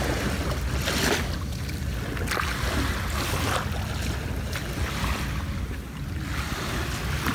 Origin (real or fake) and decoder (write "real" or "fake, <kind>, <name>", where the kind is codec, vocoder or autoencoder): real